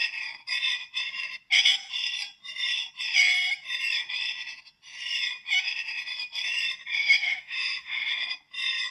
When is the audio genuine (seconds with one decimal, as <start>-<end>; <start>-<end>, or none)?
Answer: 0.0-7.0; 8.1-8.9